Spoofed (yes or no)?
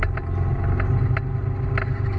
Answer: no